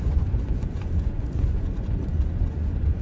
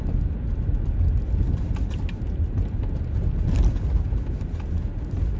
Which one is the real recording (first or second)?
second